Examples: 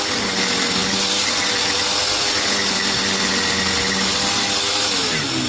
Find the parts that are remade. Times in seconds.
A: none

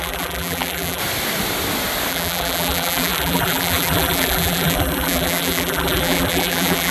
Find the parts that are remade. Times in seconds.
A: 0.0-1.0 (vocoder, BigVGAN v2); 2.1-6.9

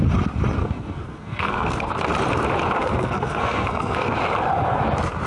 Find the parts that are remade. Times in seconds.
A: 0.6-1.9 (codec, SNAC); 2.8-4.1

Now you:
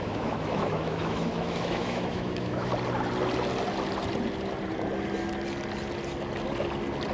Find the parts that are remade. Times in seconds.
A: 0.0-2.7 (autoencoder, DAC-VAE)

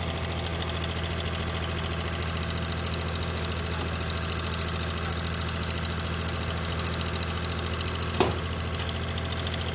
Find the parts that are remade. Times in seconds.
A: none